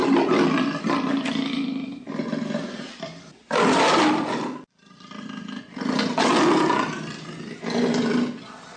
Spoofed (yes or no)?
no